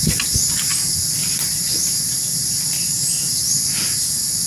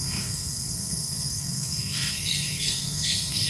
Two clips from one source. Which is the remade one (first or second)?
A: second